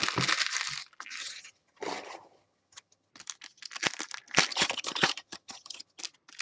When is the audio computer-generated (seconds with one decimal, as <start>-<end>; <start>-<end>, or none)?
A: 1.2-3.1; 4.5-6.0